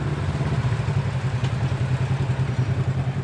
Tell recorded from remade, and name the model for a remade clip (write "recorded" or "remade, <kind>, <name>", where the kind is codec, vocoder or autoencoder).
recorded